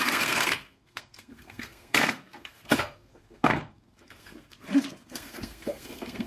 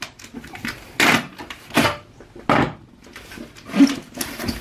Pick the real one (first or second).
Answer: second